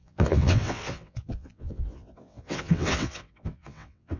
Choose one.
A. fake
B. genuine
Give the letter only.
A